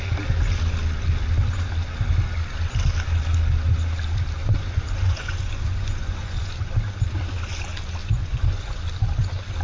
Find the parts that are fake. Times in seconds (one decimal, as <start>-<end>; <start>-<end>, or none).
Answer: 4.4-6.5; 8.0-8.8